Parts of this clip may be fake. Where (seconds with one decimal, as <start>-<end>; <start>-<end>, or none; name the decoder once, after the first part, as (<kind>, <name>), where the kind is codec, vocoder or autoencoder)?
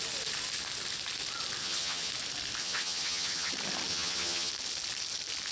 1.6-2.1 (vocoder, HiFi-GAN); 2.6-3.5; 3.9-4.5